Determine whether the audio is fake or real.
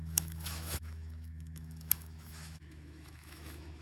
fake